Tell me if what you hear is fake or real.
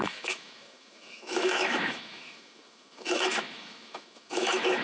fake